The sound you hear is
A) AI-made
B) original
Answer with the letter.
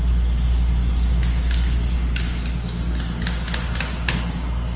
B